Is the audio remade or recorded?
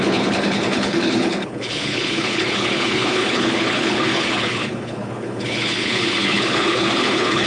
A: remade